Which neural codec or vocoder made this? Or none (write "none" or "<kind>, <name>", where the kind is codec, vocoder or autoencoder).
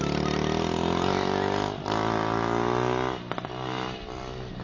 none